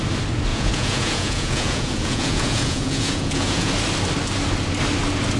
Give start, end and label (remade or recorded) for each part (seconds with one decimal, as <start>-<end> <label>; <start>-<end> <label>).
0.0-0.5 recorded; 0.5-3.7 remade; 3.7-5.4 recorded